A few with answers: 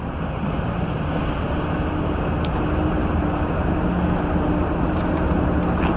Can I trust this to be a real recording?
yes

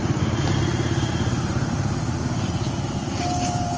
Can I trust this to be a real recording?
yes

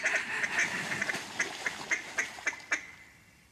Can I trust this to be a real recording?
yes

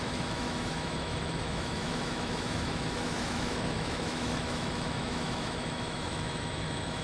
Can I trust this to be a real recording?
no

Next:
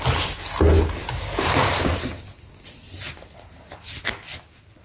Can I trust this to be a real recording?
yes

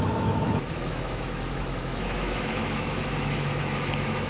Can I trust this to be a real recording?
no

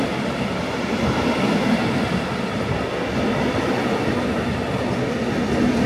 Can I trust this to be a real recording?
yes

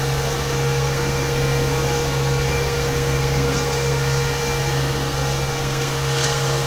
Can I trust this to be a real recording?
no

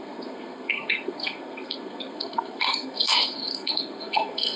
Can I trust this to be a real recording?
no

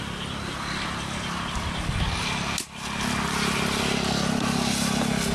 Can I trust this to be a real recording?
yes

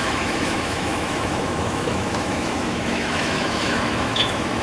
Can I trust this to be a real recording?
no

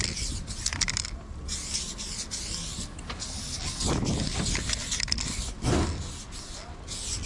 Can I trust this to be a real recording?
yes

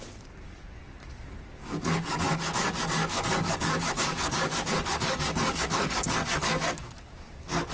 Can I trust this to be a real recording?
no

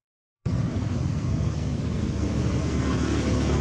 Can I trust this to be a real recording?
no